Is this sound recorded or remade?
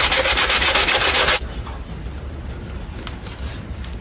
recorded